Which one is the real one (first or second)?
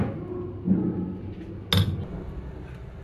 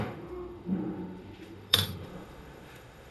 first